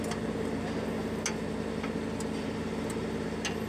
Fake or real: real